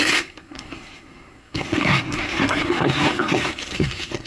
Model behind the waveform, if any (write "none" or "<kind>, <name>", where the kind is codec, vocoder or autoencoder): codec, SNAC